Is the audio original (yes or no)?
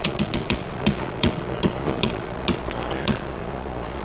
no